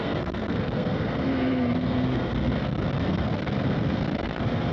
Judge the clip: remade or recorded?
remade